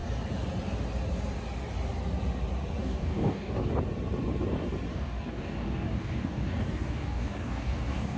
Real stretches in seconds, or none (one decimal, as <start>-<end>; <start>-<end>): 0.0-2.8; 3.7-4.9